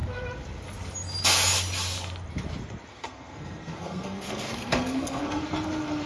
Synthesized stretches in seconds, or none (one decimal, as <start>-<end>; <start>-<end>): 2.9-5.4